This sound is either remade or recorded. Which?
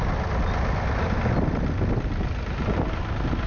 recorded